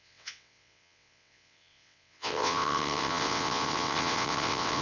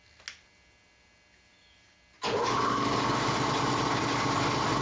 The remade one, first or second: first